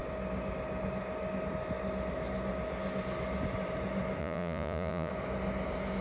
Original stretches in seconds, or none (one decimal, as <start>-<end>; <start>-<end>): 0.0-4.2; 5.1-6.0